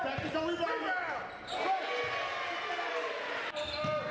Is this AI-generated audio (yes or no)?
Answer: no